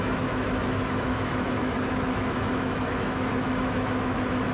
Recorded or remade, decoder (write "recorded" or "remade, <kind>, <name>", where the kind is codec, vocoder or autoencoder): remade, autoencoder, DAC-VAE